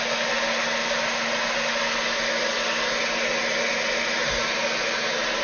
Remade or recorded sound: recorded